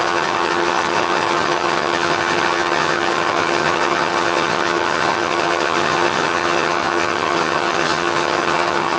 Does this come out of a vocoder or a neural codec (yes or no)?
yes